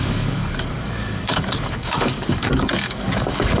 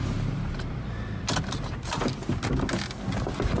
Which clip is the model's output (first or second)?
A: first